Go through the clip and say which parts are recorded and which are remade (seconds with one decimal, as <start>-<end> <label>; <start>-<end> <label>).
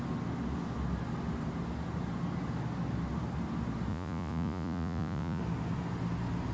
0.0-3.9 recorded; 3.9-5.4 remade; 5.4-6.5 recorded